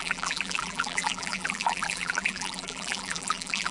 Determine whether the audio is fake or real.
fake